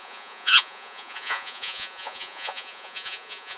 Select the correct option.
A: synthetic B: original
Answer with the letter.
A